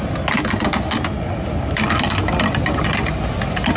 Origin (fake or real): real